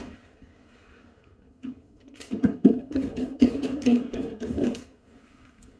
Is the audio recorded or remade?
remade